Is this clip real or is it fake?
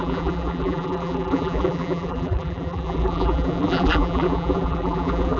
fake